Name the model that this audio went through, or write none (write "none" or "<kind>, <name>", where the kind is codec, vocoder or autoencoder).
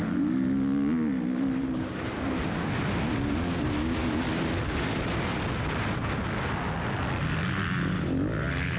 none